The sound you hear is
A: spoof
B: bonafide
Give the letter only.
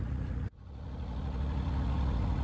A